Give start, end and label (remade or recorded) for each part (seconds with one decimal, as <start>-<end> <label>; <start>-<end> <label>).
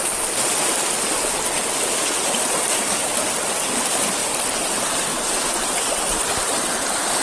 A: 0.0-7.2 recorded